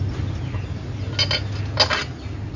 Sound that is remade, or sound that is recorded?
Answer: recorded